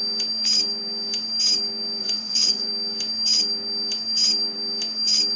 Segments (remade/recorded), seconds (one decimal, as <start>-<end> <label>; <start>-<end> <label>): 0.0-2.0 recorded; 2.0-2.7 remade; 2.7-5.4 recorded